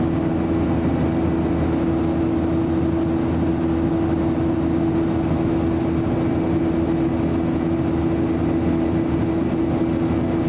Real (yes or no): yes